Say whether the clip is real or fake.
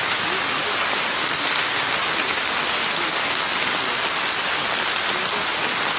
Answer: real